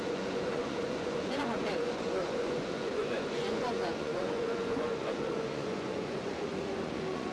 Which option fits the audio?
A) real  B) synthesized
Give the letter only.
B